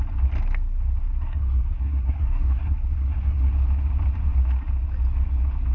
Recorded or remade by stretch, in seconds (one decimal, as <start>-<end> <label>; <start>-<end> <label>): 0.0-1.0 recorded; 1.0-3.5 remade; 3.5-5.7 recorded